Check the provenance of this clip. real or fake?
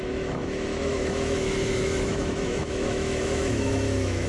fake